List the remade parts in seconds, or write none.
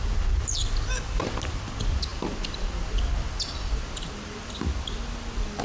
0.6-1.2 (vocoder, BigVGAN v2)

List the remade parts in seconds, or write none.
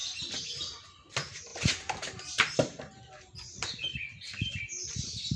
1.5-3.1 (vocoder, BigVGAN v2)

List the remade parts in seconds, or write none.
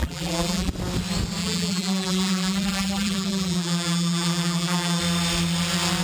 0.0-0.7 (vocoder, BigVGAN v2); 1.4-5.0